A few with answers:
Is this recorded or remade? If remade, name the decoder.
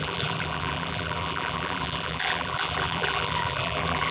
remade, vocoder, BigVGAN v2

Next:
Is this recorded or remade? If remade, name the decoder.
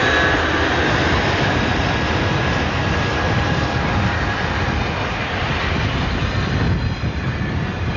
recorded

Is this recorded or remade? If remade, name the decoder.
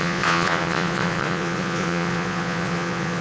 remade, vocoder, Vocos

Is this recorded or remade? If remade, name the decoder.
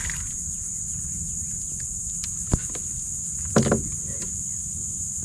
recorded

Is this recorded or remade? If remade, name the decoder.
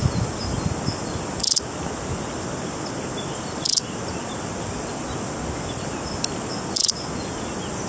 recorded